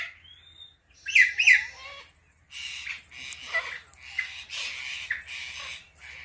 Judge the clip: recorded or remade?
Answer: recorded